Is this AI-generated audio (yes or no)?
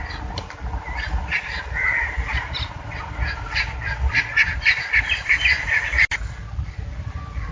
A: no